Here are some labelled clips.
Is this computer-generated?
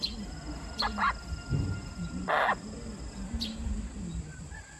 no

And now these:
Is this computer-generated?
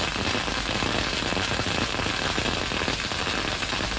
no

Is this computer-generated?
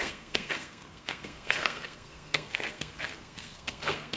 yes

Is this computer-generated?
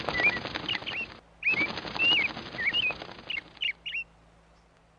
no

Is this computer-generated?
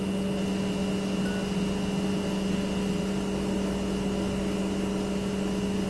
no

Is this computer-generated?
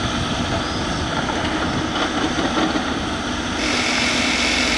no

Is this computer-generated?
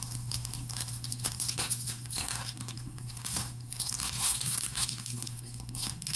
yes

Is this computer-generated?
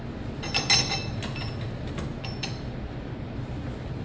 no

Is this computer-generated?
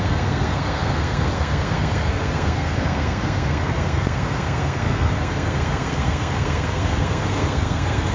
yes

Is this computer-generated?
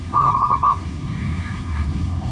yes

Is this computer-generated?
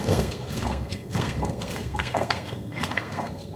yes